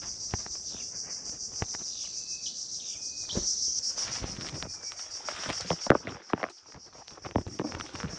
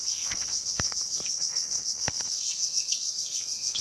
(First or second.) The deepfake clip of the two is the second